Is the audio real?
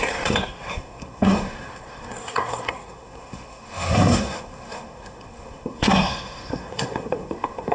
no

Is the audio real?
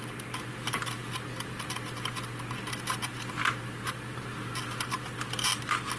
yes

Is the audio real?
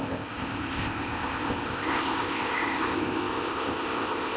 no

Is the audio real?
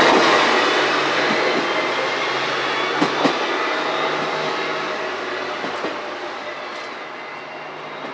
yes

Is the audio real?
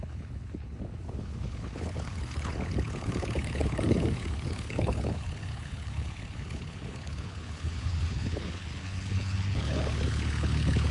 no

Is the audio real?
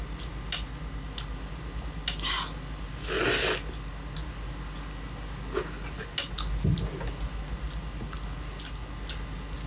yes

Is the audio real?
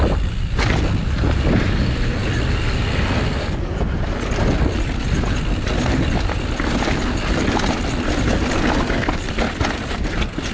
yes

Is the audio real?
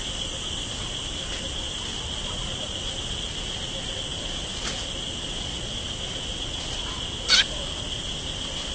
yes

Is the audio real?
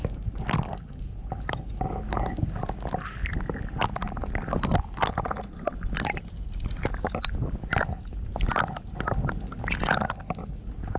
yes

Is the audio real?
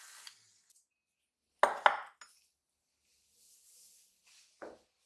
yes